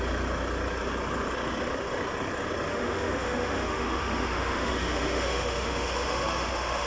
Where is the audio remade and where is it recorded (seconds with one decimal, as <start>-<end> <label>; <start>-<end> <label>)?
0.0-2.7 recorded; 2.7-6.9 remade

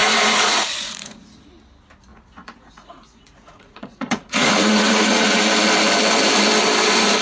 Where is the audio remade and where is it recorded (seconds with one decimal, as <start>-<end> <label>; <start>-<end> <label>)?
0.0-1.2 remade; 1.2-2.1 recorded; 2.1-5.4 remade; 5.4-7.2 recorded

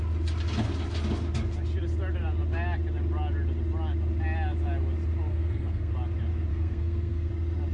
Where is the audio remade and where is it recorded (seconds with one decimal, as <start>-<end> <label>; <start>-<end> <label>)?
0.0-5.3 recorded; 5.3-5.9 remade; 5.9-6.5 recorded; 6.5-7.3 remade; 7.3-7.7 recorded

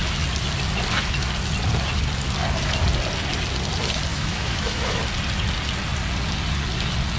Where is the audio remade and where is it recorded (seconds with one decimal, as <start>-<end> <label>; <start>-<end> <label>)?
0.0-4.1 recorded; 4.1-5.0 remade; 5.0-7.2 recorded